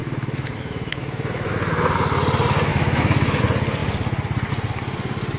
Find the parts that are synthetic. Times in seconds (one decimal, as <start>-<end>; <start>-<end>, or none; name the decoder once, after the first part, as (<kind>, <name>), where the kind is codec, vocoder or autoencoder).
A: 0.0-1.5 (autoencoder, DAC-VAE); 2.7-3.4